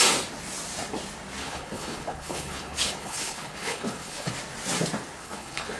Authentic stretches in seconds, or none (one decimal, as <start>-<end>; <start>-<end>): 0.0-1.4; 4.3-5.2